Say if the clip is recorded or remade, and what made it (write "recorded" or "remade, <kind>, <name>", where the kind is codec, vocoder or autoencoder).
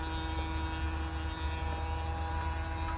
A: recorded